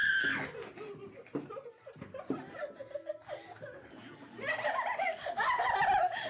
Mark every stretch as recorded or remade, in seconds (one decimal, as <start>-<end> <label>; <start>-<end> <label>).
0.0-1.0 recorded; 1.0-2.6 remade; 2.6-6.3 recorded